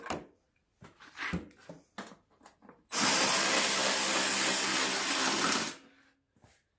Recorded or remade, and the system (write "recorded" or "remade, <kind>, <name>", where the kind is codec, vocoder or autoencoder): recorded